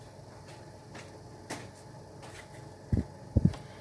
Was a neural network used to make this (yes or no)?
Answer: no